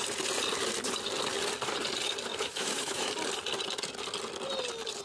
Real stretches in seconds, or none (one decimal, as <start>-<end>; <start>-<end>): 0.0-2.3; 3.1-5.0